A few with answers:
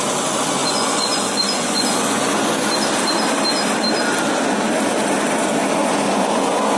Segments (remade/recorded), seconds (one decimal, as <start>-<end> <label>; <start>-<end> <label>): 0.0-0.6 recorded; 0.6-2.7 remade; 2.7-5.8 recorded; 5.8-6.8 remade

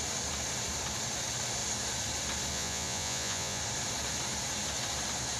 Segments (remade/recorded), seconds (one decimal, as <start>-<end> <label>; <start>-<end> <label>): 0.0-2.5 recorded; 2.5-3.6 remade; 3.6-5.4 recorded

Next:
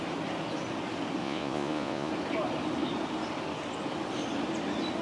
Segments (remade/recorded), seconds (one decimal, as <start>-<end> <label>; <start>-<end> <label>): 0.0-1.2 recorded; 1.2-2.1 remade; 2.1-5.0 recorded